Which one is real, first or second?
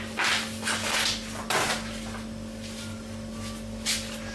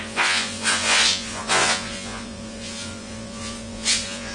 first